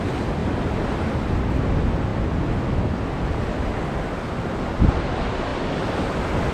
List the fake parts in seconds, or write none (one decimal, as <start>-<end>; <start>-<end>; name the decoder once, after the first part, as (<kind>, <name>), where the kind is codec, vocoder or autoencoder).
none